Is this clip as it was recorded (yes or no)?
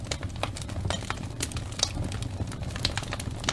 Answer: yes